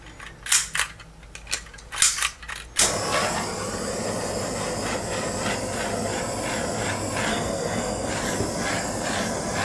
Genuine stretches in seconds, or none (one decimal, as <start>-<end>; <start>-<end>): 0.0-7.3; 8.1-9.6